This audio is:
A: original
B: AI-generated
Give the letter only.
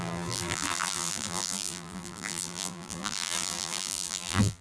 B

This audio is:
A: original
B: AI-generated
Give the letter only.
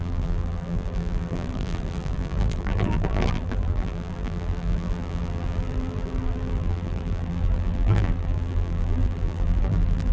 B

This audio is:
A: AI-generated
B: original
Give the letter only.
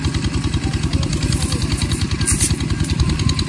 B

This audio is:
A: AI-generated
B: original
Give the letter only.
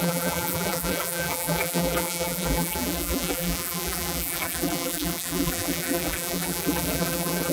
A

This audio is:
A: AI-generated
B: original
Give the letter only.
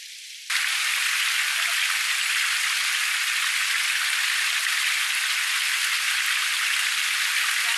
B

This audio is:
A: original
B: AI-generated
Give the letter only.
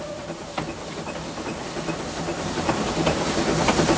A